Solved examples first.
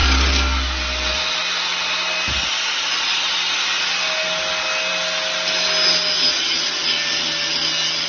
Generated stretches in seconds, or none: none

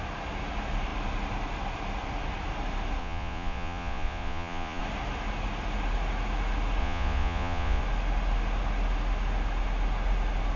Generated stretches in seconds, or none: 3.0-4.8 (vocoder, Vocos); 6.8-7.8

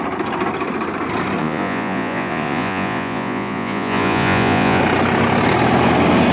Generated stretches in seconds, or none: 1.4-4.8 (vocoder, Vocos)